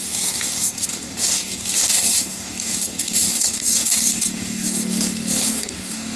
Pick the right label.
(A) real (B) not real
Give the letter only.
B